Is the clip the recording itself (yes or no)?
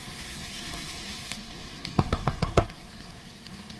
no